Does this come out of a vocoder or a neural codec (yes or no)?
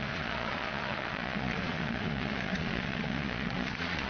yes